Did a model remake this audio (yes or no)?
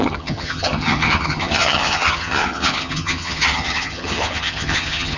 yes